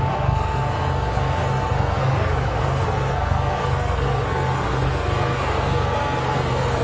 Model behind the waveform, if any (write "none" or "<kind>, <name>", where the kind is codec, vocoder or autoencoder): codec, SNAC